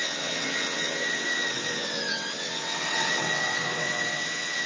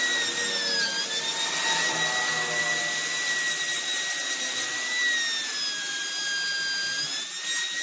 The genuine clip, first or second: second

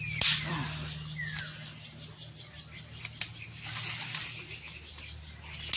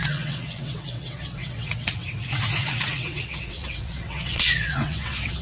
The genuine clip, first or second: first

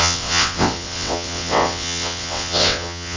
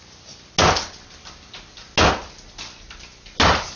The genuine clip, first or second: second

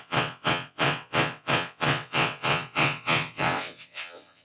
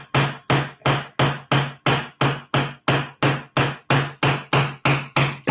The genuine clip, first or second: second